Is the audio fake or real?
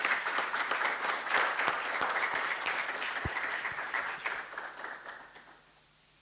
real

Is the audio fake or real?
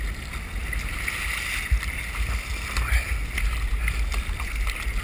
real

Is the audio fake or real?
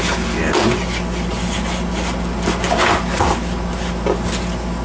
real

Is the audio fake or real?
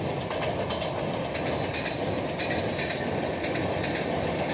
fake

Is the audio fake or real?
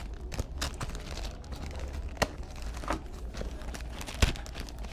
real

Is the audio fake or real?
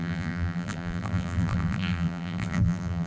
fake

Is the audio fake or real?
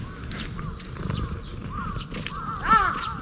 real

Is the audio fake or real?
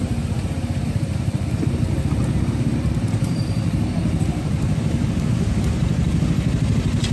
fake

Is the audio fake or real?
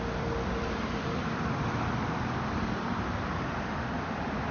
fake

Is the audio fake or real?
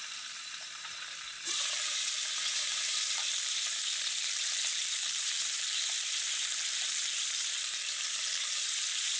fake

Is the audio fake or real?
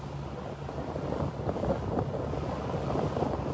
real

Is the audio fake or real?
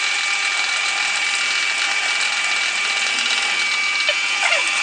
real